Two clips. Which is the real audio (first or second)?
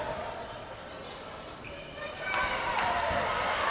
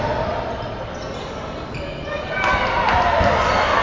second